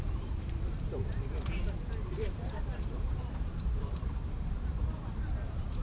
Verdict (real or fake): fake